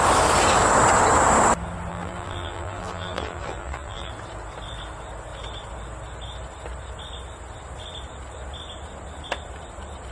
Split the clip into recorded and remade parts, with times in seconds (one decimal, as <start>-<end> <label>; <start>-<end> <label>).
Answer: 0.0-1.9 recorded; 1.9-4.1 remade; 4.1-10.1 recorded